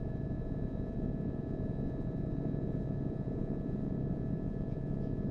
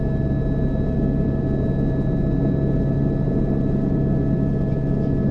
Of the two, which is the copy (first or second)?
first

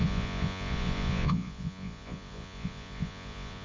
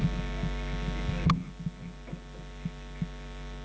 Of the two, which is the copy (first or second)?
first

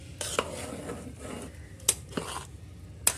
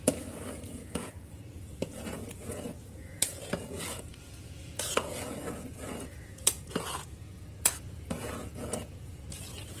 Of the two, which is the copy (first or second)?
second